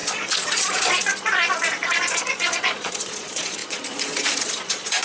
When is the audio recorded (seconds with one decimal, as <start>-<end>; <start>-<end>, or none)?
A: none